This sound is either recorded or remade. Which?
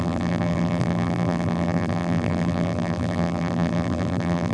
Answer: remade